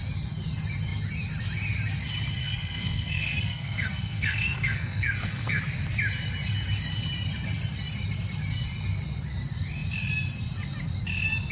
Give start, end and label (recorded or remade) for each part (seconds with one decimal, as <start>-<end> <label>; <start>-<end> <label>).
0.0-2.4 recorded; 2.4-5.6 remade; 5.6-11.5 recorded